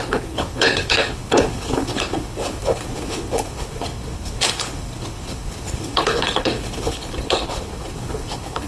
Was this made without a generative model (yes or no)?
no